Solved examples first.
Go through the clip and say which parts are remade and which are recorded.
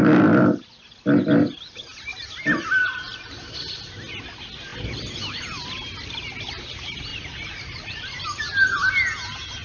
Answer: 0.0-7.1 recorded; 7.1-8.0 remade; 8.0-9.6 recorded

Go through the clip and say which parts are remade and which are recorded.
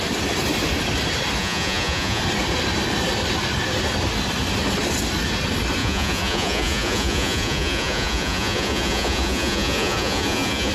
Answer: 0.0-1.4 recorded; 1.4-2.2 remade; 2.2-5.8 recorded; 5.8-10.7 remade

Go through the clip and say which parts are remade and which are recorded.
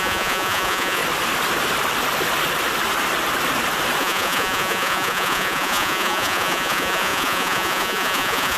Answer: 0.0-1.0 remade; 1.0-4.0 recorded; 4.0-8.6 remade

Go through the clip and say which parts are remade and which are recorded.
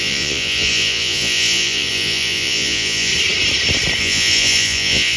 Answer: 0.0-3.1 remade; 3.1-4.0 recorded; 4.0-5.2 remade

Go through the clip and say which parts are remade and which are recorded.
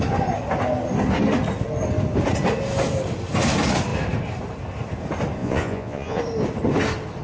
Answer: 0.0-5.4 recorded; 5.4-6.2 remade; 6.2-7.2 recorded